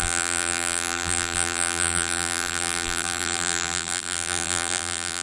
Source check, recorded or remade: remade